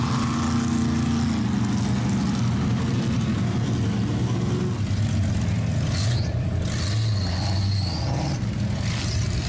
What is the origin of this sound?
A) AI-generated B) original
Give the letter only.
B